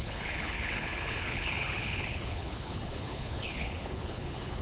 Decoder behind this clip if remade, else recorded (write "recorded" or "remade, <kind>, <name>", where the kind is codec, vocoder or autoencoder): remade, codec, HILCodec